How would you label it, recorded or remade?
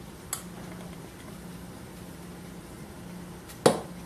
recorded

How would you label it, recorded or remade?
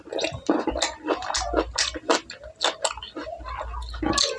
recorded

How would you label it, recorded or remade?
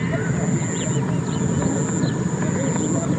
recorded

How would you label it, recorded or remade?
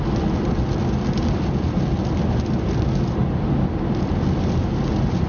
recorded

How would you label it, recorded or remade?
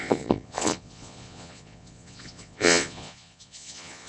remade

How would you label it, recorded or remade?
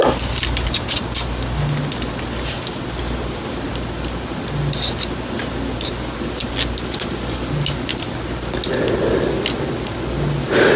recorded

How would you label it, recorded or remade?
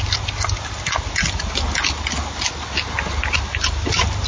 recorded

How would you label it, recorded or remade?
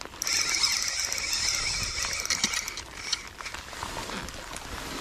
recorded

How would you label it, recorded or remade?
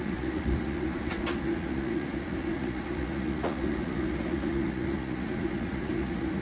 remade